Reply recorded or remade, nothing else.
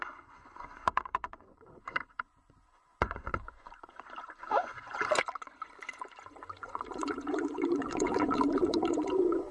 remade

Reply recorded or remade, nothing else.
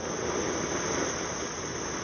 recorded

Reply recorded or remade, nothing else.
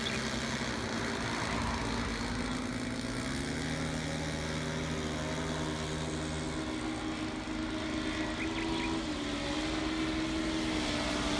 recorded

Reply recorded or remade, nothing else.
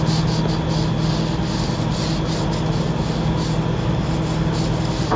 recorded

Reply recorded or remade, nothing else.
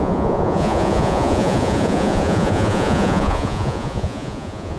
remade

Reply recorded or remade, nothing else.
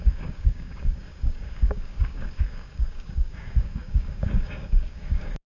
remade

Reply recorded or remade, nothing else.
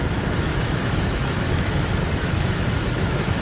remade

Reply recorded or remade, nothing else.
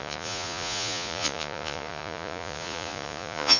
remade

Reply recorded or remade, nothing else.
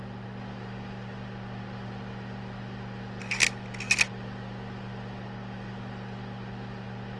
recorded